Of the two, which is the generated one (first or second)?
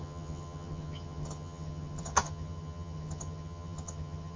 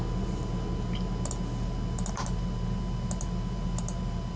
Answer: first